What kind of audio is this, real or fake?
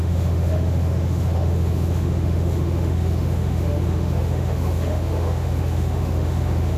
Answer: fake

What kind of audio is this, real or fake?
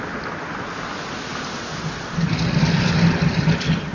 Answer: real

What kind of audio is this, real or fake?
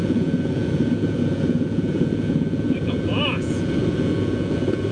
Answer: fake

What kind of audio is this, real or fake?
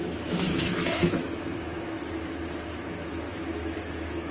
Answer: fake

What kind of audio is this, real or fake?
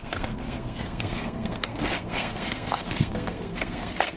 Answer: fake